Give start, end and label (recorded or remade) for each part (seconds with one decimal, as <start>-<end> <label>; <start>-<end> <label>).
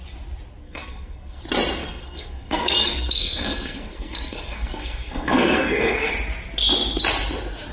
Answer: 0.0-0.6 recorded; 0.6-1.4 remade; 1.4-1.8 recorded; 1.8-6.1 remade; 6.1-7.7 recorded